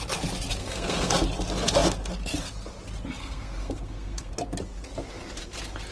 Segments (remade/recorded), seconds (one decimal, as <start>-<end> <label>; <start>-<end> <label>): 0.0-0.6 recorded; 0.6-1.1 remade; 1.1-3.2 recorded; 3.2-4.3 remade; 4.3-5.9 recorded